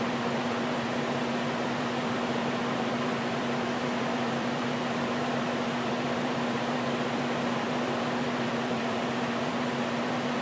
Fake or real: fake